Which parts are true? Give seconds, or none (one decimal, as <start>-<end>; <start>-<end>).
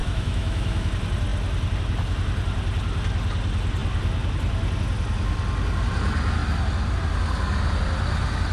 0.9-8.5